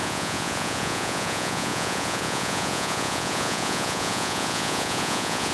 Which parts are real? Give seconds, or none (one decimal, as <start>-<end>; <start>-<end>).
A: none